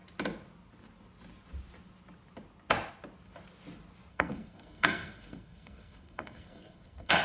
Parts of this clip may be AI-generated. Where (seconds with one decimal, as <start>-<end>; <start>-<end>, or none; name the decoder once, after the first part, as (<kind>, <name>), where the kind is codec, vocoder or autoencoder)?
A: 4.1-7.2 (codec, SNAC)